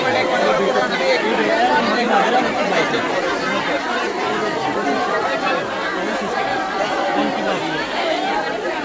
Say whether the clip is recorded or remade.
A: remade